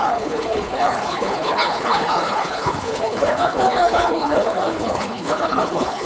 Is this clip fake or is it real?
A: fake